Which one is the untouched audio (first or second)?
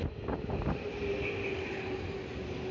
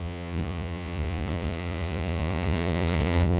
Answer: first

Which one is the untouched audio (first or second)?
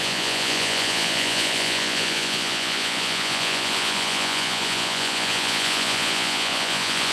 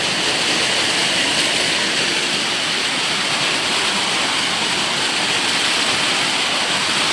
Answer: second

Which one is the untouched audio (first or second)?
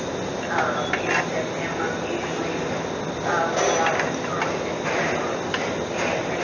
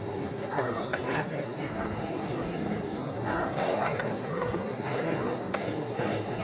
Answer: first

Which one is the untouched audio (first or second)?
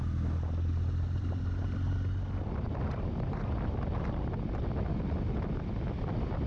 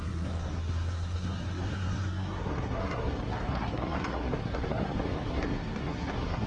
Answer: first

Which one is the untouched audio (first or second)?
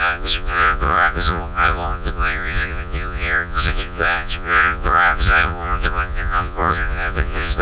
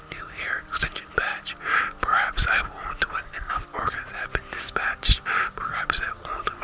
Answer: second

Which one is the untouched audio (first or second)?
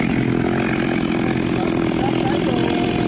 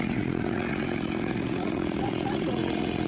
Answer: first